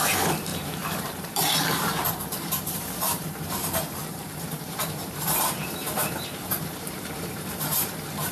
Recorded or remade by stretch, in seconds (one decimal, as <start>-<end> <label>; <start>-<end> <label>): 0.0-8.3 remade

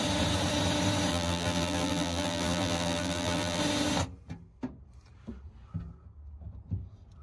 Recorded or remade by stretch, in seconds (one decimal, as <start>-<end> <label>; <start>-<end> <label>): 0.0-1.1 recorded; 1.1-3.6 remade; 3.6-7.2 recorded

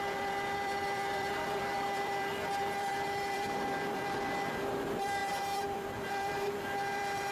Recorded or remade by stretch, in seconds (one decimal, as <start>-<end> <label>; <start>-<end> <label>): 0.0-7.3 remade